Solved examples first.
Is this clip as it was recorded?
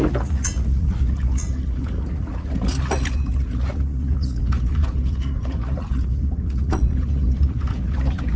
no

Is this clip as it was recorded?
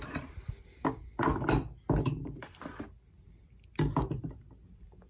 yes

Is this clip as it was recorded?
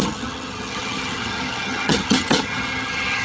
no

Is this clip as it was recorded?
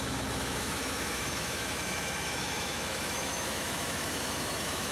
no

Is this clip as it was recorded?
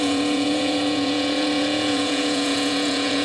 no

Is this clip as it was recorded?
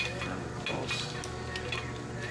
yes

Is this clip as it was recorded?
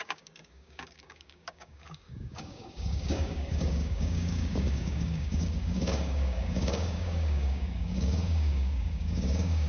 no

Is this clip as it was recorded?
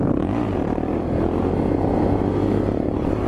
no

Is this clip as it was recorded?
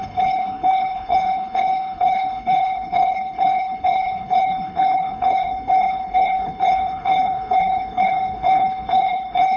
no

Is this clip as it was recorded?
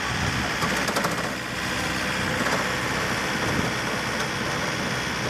yes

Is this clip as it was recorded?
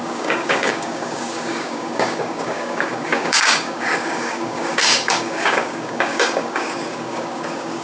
no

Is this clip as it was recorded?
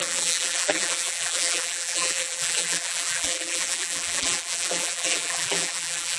no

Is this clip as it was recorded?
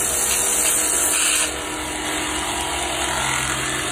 yes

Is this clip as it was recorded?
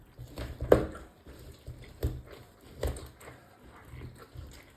yes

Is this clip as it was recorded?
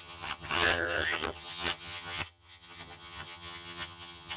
no